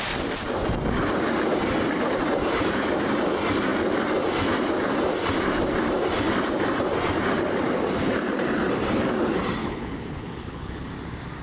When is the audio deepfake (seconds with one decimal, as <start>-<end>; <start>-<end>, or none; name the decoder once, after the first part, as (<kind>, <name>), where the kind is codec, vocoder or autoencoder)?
9.6-10.9 (codec, HILCodec)